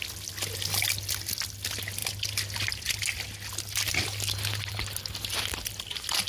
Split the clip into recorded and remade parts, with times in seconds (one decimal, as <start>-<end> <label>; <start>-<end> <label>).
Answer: 0.0-6.3 recorded